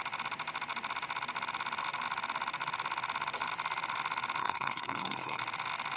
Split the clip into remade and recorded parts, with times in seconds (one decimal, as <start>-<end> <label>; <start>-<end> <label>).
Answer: 0.0-4.4 recorded; 4.4-5.4 remade; 5.4-6.0 recorded

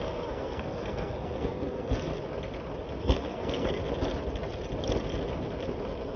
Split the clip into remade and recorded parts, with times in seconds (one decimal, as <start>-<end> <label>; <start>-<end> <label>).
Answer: 0.0-2.1 remade; 2.1-3.0 recorded; 3.0-3.8 remade; 3.8-6.2 recorded

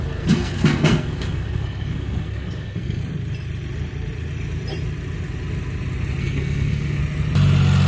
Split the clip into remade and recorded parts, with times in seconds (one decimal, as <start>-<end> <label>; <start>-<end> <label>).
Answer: 0.0-3.0 remade; 3.0-6.2 recorded; 6.2-7.0 remade; 7.0-7.9 recorded

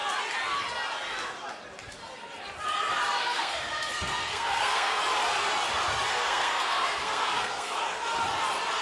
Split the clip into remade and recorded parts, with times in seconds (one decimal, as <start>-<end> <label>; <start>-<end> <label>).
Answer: 0.0-3.2 recorded; 3.2-5.0 remade; 5.0-6.1 recorded; 6.1-7.8 remade; 7.8-8.8 recorded

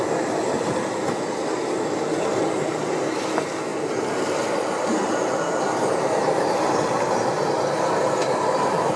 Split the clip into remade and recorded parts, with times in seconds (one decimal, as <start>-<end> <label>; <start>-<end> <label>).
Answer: 0.0-9.0 recorded

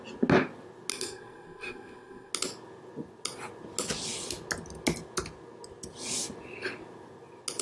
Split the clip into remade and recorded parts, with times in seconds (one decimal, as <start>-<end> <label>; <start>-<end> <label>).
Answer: 0.0-0.9 recorded; 0.9-2.3 remade; 2.3-7.6 recorded